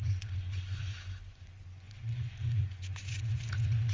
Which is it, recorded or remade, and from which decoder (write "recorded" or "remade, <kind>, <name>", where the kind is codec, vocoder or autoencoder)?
remade, vocoder, Vocos